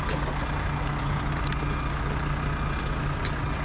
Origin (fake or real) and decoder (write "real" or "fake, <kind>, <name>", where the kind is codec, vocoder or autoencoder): real